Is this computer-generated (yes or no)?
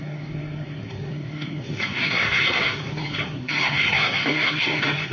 yes